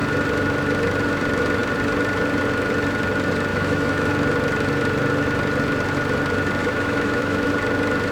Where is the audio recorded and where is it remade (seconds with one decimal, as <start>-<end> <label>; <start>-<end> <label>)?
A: 0.0-3.5 recorded; 3.5-4.1 remade; 4.1-6.6 recorded; 6.6-7.5 remade; 7.5-8.1 recorded